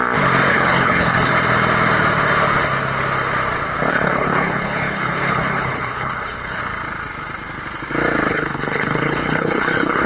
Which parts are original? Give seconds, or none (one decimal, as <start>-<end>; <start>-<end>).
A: 0.0-0.5; 1.3-3.9; 6.6-8.3